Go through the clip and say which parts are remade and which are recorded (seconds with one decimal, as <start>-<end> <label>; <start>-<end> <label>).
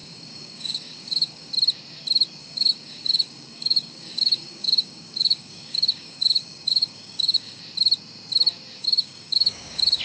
0.0-1.5 remade; 1.5-2.4 recorded; 2.4-7.6 remade; 7.6-8.8 recorded; 8.8-10.0 remade